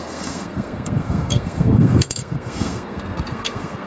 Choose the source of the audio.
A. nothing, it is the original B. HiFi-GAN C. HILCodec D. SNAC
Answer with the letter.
D